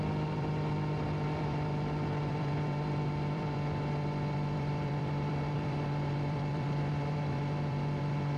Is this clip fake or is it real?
fake